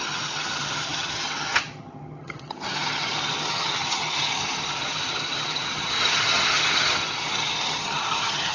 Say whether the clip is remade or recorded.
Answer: remade